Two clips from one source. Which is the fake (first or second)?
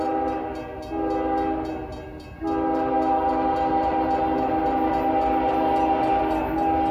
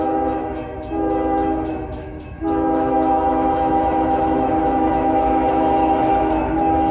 second